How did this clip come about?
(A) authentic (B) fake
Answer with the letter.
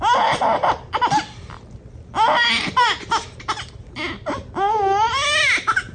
A